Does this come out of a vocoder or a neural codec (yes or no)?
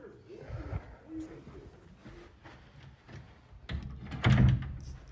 no